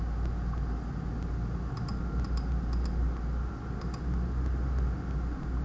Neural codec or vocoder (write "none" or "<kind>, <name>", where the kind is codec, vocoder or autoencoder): none